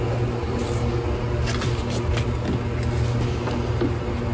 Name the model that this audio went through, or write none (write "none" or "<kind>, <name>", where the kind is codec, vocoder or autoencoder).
none